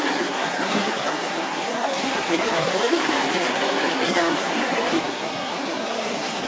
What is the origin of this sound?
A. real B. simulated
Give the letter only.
B